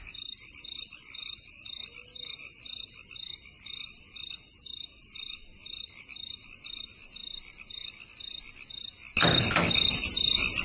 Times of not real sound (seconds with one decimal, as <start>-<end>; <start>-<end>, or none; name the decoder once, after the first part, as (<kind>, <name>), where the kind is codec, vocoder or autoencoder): none